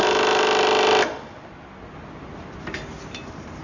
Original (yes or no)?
yes